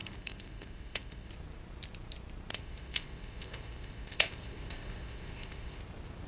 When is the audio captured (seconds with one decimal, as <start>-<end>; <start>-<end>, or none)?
1.3-2.5; 5.8-6.3